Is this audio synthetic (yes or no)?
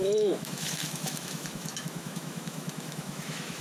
yes